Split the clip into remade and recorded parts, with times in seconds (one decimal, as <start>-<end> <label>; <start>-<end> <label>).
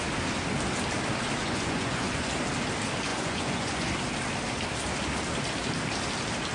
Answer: 0.0-1.4 recorded; 1.4-2.3 remade; 2.3-3.1 recorded; 3.1-3.9 remade; 3.9-6.5 recorded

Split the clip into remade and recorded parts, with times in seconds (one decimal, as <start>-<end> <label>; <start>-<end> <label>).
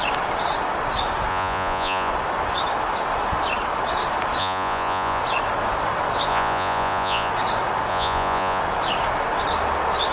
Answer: 0.0-1.3 recorded; 1.3-2.1 remade; 2.1-4.4 recorded; 4.4-5.2 remade; 5.2-6.3 recorded; 6.3-7.3 remade; 7.3-7.9 recorded; 7.9-8.6 remade; 8.6-10.1 recorded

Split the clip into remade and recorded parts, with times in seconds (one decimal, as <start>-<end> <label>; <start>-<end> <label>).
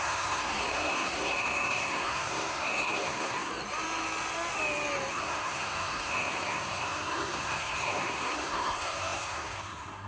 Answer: 0.0-3.5 remade; 3.5-5.1 recorded; 5.1-10.1 remade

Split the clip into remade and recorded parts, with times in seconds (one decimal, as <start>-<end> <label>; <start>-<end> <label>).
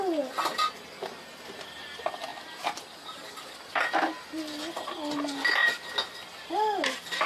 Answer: 0.0-2.3 recorded; 2.3-3.3 remade; 3.3-7.3 recorded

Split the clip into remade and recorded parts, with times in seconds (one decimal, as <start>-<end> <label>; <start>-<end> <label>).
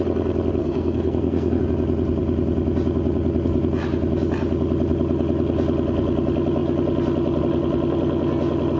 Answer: 0.0-0.6 recorded; 0.6-1.6 remade; 1.6-8.8 recorded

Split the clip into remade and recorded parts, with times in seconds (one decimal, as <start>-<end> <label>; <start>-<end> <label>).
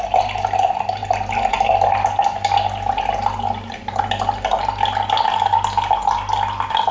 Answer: 0.0-6.9 recorded